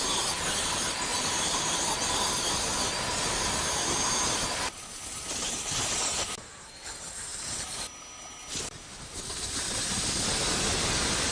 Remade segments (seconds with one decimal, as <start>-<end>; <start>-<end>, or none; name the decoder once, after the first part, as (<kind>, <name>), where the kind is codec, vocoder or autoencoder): 1.1-1.7 (vocoder, BigVGAN v2); 7.3-7.9